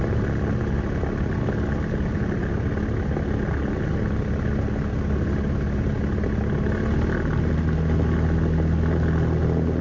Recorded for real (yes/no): yes